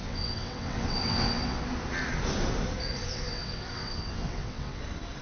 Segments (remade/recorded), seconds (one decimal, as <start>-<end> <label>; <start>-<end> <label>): 0.0-1.6 remade; 1.6-3.0 recorded; 3.0-4.8 remade; 4.8-5.2 recorded